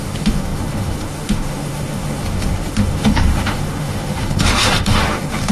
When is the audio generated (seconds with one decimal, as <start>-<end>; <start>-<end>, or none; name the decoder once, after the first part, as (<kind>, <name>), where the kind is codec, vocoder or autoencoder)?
0.0-5.5 (autoencoder, DAC-VAE)